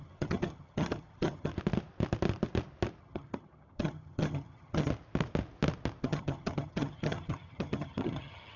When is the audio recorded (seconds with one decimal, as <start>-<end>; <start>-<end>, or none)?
1.5-3.0; 4.9-6.0